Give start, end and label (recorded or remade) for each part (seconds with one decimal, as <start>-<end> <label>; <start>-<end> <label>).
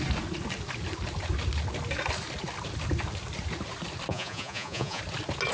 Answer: 0.0-4.1 recorded; 4.1-5.0 remade; 5.0-5.5 recorded